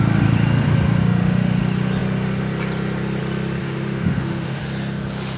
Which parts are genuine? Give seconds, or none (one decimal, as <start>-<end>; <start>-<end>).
0.0-1.0; 1.6-3.6; 4.6-5.4